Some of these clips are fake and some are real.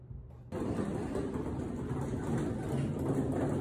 real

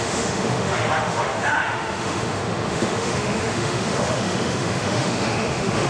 fake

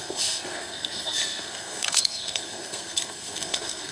fake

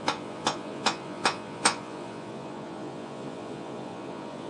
fake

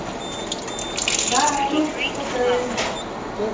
real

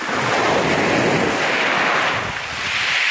real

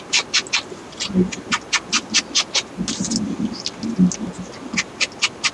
real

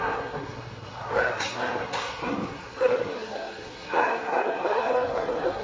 fake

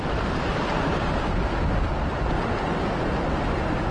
real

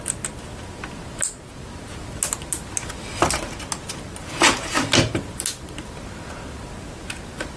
real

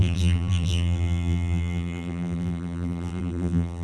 fake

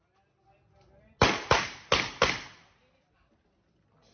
real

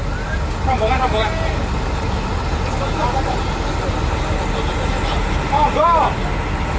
real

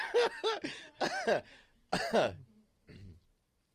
real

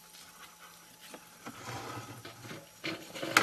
real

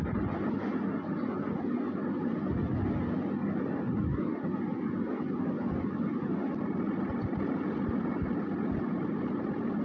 real